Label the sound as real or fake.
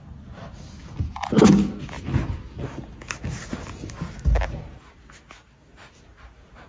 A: real